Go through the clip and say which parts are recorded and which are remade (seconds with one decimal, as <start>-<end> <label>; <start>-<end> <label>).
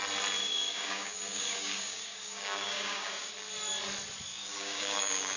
0.0-0.4 recorded; 0.4-3.3 remade; 3.3-4.3 recorded; 4.3-5.4 remade